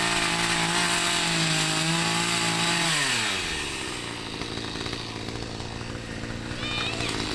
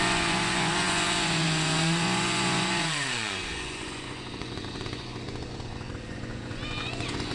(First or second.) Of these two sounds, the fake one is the second